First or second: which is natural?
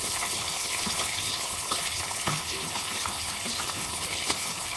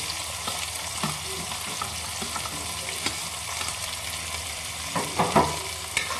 second